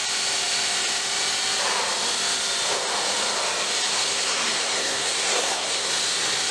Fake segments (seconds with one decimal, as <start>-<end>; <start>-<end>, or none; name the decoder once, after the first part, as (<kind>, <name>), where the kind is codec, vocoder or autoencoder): 3.9-5.9 (codec, SNAC)